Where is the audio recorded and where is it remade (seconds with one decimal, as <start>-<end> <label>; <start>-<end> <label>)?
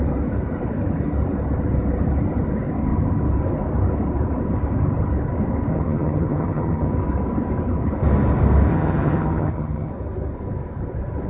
0.0-5.7 recorded; 5.7-6.9 remade; 6.9-8.7 recorded; 8.7-9.9 remade; 9.9-11.3 recorded